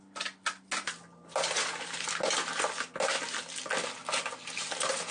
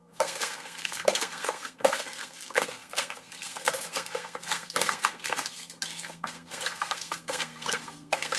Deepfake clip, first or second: second